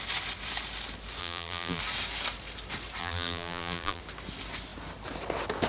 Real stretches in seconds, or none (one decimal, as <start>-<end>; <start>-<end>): 0.0-1.2; 1.8-3.0; 4.0-5.7

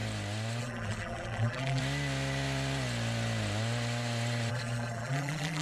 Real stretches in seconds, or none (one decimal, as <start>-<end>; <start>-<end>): 0.0-0.6; 1.8-4.5

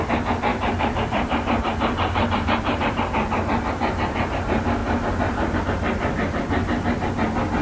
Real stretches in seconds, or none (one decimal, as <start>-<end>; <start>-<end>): 0.0-0.5; 2.8-4.8; 5.6-7.6

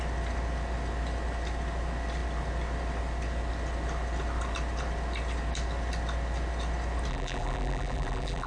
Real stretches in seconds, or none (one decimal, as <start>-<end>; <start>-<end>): 0.0-7.1

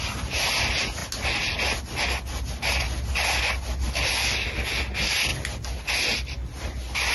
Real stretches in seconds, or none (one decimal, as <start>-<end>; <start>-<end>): 0.0-7.1